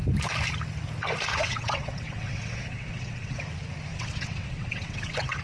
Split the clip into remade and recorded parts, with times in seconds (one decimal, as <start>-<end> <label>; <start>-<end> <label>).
0.0-1.3 recorded; 1.3-3.4 remade; 3.4-3.9 recorded; 3.9-5.4 remade